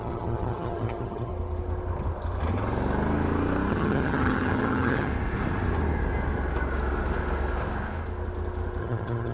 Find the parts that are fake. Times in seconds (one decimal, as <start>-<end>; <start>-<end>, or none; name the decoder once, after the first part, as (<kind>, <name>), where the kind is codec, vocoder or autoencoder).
0.0-1.3 (vocoder, HiFi-GAN); 3.7-5.1; 8.8-9.3